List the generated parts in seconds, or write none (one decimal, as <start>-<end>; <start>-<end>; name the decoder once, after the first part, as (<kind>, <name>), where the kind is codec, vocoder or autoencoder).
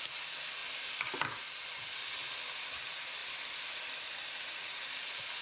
none